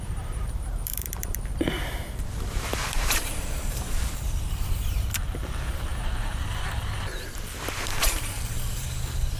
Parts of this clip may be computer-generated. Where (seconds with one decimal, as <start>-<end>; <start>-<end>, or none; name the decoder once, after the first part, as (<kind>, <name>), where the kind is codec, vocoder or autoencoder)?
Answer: 0.0-9.4 (vocoder, BigVGAN v2)